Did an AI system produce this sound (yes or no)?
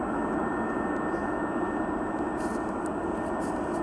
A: no